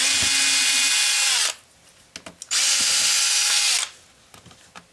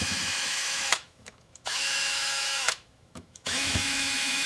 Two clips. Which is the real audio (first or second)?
first